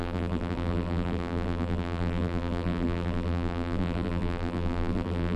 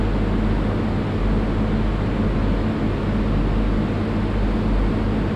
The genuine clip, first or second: second